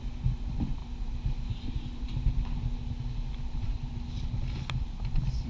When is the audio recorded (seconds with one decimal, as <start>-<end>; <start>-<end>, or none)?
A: 0.0-5.5